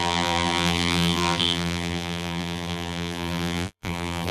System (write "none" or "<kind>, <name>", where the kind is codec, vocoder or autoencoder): vocoder, BigVGAN v2